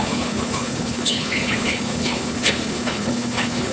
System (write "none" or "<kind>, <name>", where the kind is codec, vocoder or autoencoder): codec, HILCodec